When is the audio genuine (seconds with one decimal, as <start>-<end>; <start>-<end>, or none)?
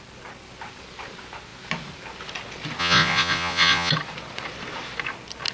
0.0-2.8; 3.9-5.5